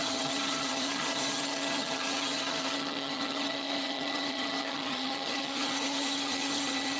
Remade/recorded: remade